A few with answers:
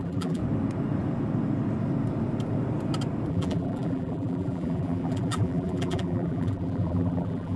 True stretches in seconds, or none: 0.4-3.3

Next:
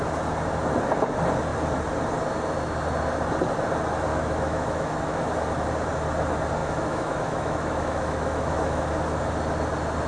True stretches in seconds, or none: 0.0-4.1; 5.3-6.6; 8.9-10.1